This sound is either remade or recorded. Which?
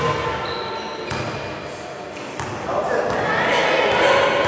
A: recorded